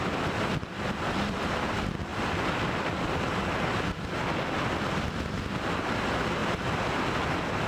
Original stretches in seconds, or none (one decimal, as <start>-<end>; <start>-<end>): 0.0-7.7